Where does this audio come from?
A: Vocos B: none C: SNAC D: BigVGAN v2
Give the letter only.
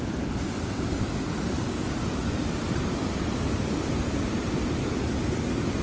B